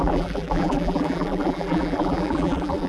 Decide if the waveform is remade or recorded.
remade